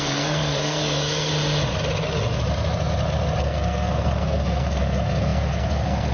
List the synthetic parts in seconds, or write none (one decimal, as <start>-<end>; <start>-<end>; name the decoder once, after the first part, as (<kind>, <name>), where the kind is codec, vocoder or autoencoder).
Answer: 0.0-1.3 (codec, SNAC); 3.4-6.1